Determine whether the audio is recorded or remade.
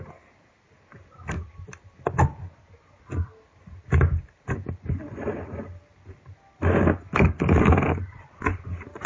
recorded